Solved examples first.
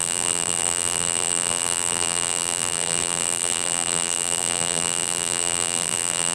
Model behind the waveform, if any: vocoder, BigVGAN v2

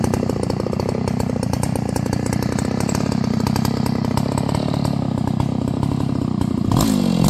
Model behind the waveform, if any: none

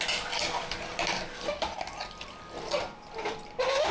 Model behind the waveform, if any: none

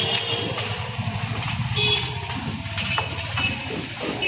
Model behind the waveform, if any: none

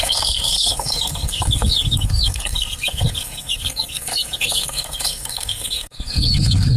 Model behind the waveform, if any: codec, SNAC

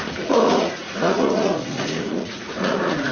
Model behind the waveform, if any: vocoder, Vocos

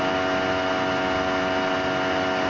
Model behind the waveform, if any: none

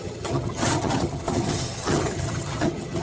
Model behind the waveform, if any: vocoder, HiFi-GAN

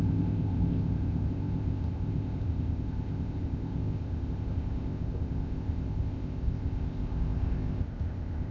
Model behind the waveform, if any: codec, ZipCodec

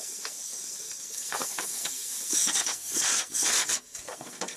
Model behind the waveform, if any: codec, SNAC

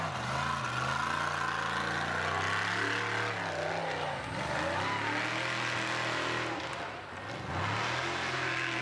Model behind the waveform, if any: none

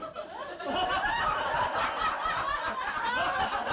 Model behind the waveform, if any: none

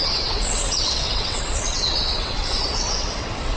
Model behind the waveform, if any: vocoder, WaveNeXt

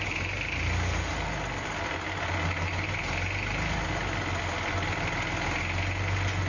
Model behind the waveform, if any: none